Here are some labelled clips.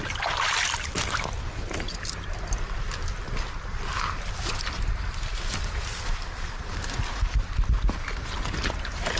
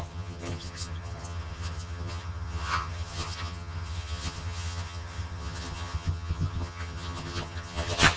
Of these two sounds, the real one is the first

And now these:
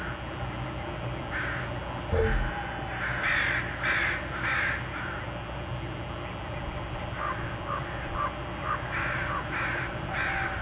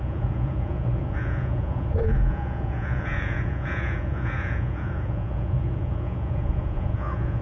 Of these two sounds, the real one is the first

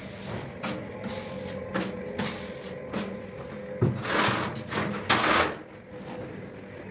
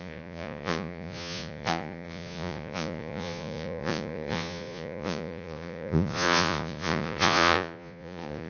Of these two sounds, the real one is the first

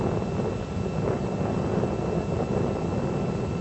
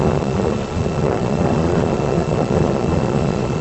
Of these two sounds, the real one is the first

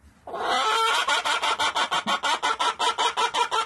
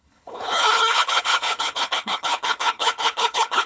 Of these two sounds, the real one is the first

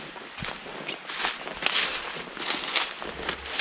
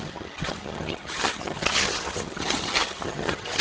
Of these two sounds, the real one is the first